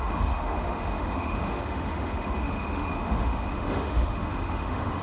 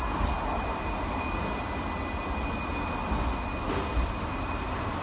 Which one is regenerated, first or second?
first